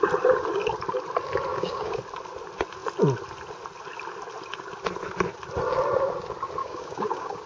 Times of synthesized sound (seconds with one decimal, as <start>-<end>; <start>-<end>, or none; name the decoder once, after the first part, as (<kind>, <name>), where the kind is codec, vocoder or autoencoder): 1.5-2.0 (codec, DAC); 6.6-7.5